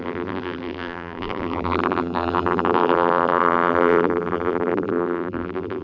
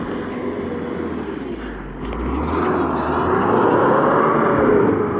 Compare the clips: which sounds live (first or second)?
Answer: second